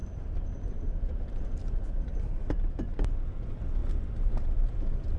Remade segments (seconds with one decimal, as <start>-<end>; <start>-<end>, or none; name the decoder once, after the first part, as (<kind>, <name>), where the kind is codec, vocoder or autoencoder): 0.0-3.8 (vocoder, BigVGAN v2); 4.3-5.2